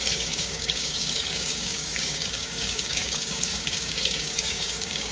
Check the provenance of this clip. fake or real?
fake